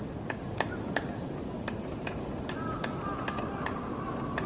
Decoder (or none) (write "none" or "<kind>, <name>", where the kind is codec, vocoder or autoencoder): none